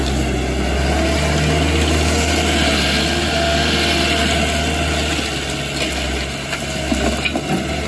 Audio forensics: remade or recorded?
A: recorded